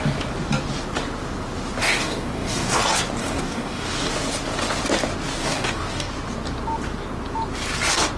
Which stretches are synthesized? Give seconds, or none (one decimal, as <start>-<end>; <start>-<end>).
1.8-2.8; 3.2-4.1; 5.4-6.1